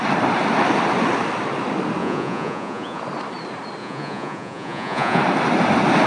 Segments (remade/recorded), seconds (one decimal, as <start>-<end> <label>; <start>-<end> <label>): 0.0-2.0 recorded; 2.0-3.0 remade; 3.0-3.8 recorded; 3.8-5.2 remade; 5.2-6.1 recorded